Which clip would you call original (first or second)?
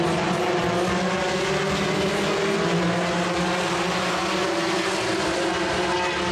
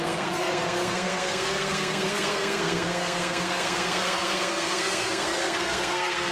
first